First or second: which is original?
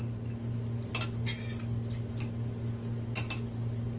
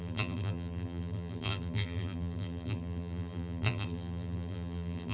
first